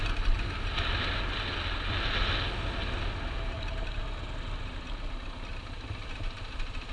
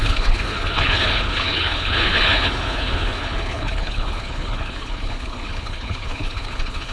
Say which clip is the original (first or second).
first